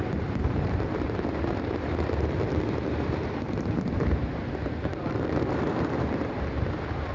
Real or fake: fake